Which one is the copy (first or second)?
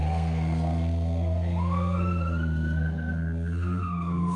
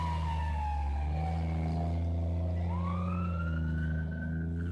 first